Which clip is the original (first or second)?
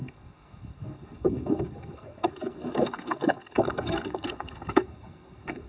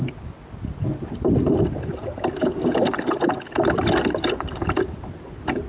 second